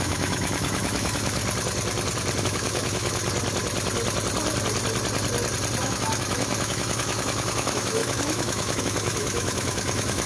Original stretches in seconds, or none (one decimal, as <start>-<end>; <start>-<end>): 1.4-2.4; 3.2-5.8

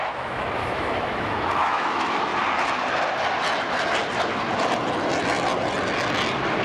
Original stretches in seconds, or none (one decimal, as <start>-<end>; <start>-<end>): 2.3-6.6

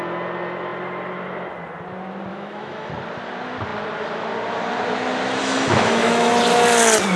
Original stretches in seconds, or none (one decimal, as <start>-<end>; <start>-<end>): 0.0-2.3; 2.9-5.4; 6.3-7.2

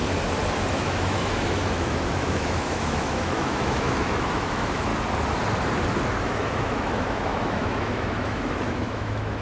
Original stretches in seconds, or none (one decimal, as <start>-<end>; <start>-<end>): 0.0-0.7; 4.9-6.2